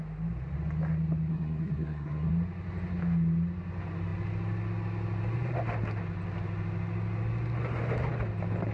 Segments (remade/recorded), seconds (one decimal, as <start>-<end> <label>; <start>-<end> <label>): 0.0-1.3 recorded; 1.3-2.3 remade; 2.3-8.7 recorded